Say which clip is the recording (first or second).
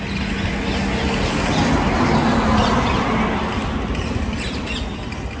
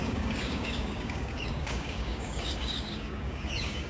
first